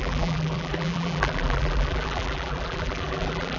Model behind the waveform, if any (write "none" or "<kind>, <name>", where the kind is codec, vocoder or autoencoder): vocoder, BigVGAN v2